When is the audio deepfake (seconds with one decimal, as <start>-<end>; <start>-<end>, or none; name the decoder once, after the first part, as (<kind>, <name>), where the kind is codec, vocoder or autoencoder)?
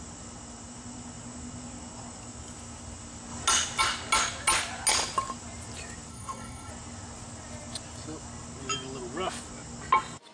6.1-6.7 (codec, SNAC)